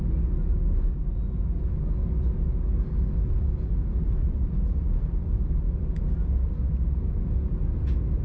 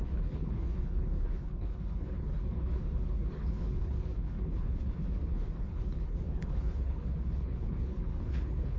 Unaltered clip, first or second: first